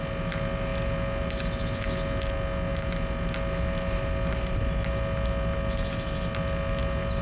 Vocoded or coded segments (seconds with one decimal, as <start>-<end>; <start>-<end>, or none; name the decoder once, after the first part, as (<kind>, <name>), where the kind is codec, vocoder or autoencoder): none